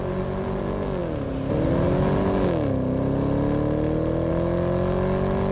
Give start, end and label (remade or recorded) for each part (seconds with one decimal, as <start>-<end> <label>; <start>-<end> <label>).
0.0-5.5 recorded